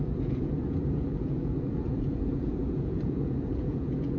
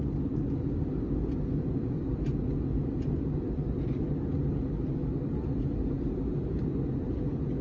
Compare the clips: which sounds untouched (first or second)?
second